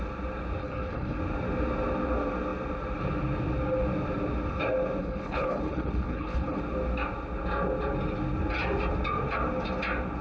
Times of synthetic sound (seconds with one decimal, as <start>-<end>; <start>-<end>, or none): 0.6-1.2; 5.0-6.6